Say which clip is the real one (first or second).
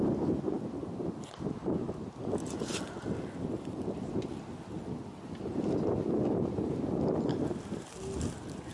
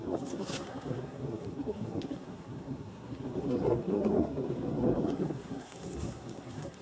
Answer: first